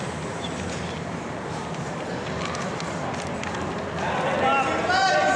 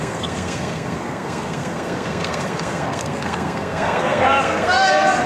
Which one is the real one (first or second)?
first